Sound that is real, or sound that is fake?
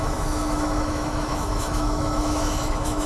fake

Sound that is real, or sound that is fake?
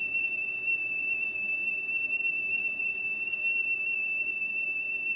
real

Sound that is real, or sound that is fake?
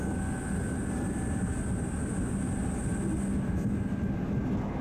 real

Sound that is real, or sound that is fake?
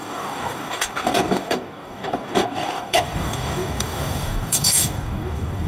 fake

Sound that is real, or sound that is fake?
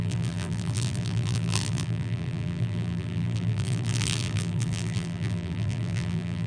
fake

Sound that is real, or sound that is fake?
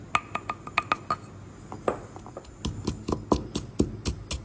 real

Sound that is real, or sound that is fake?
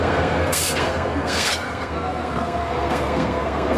fake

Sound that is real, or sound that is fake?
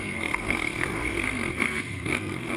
fake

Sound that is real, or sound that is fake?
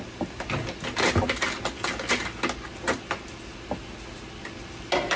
real